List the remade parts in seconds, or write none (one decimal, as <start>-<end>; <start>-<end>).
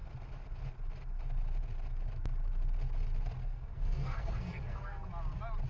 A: 3.4-5.1